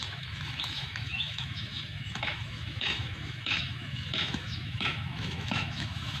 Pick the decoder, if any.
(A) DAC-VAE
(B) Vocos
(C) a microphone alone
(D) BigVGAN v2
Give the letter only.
A